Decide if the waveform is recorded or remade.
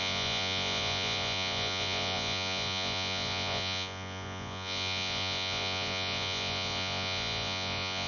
remade